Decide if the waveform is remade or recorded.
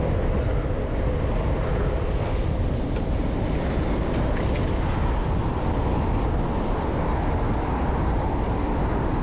recorded